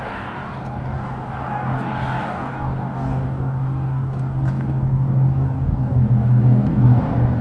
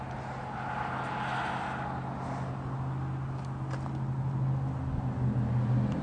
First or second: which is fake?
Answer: first